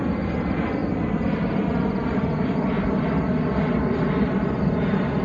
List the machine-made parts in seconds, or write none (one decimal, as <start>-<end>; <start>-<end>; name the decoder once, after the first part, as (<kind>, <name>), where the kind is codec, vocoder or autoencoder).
none

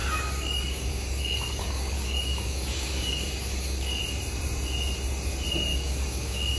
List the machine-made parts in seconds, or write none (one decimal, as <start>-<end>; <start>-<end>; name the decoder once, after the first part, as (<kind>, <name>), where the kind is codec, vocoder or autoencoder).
0.0-4.0 (codec, DAC); 5.7-6.6

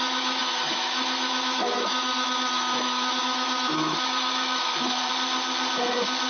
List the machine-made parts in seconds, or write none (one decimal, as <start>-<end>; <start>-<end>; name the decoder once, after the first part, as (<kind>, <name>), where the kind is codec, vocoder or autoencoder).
0.0-5.0 (autoencoder, DAC-VAE)

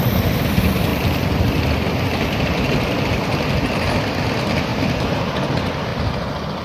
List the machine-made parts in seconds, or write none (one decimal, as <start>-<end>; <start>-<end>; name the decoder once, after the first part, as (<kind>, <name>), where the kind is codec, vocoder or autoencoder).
4.7-5.2 (vocoder, BigVGAN v2)

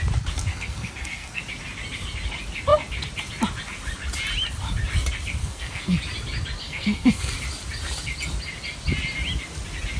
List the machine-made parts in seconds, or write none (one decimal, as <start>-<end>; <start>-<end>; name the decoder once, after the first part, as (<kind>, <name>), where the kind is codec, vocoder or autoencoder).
0.5-1.4 (codec, SNAC); 5.4-6.0; 6.6-7.3

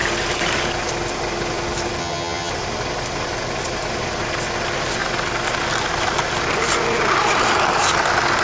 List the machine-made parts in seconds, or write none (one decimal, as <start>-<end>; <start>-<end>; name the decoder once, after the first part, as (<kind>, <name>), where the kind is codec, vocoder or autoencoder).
2.0-2.5 (vocoder, HiFi-GAN)

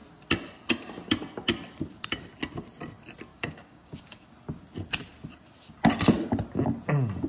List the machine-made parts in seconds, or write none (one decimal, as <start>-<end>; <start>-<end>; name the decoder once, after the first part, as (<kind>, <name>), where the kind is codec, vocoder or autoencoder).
3.3-4.3 (codec, DAC)

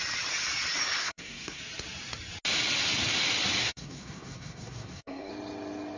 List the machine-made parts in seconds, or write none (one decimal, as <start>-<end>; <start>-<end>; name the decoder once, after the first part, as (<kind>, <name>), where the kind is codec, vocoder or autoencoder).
1.0-1.6 (codec, SNAC); 3.6-5.3